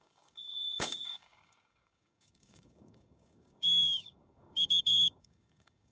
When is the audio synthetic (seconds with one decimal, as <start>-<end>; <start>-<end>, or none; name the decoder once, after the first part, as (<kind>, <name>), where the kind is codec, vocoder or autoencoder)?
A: 0.0-5.9 (codec, DAC)